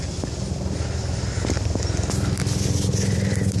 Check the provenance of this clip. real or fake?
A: real